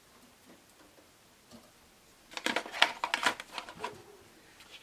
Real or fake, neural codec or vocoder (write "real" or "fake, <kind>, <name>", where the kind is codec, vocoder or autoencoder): real